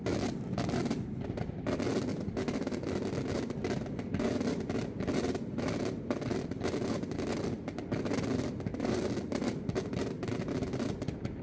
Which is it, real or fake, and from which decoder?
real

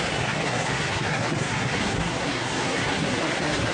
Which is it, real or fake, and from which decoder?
fake, codec, SNAC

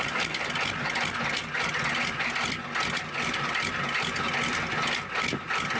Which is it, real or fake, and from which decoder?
real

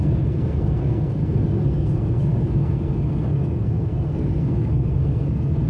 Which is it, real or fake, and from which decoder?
fake, codec, SNAC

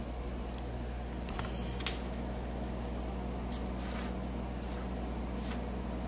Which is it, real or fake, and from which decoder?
real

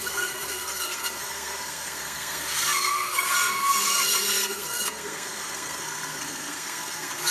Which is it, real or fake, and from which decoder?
fake, codec, SNAC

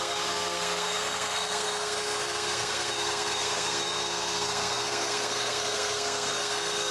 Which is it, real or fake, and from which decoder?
fake, codec, SNAC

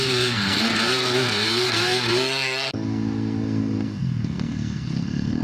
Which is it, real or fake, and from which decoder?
fake, codec, SNAC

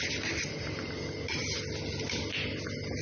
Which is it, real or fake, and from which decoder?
real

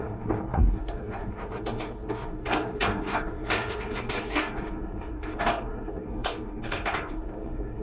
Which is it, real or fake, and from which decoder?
fake, codec, SNAC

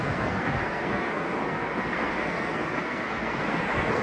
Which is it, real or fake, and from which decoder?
fake, codec, SNAC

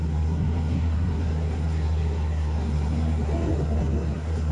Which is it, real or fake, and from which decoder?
fake, codec, SNAC